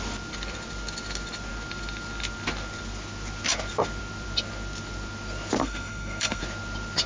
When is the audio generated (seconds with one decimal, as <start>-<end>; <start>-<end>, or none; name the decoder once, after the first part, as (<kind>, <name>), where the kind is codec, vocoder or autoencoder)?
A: 5.6-6.4 (codec, SNAC)